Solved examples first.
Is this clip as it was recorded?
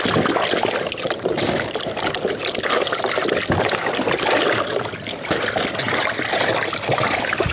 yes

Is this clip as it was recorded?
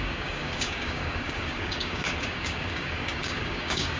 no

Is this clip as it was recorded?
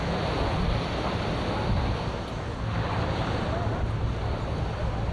yes